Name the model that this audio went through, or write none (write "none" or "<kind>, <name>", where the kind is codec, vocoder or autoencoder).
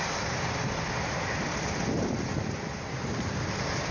none